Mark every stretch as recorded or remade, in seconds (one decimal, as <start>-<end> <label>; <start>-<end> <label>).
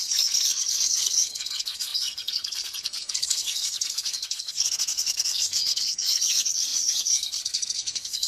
0.0-8.3 remade